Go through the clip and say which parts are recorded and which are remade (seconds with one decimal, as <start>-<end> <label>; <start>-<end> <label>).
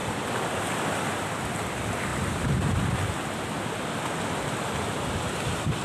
0.0-5.8 recorded